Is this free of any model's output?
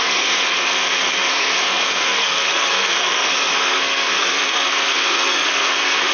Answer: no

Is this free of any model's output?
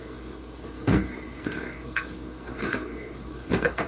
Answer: no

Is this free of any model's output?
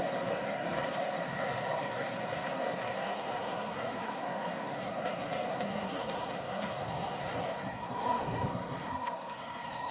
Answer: no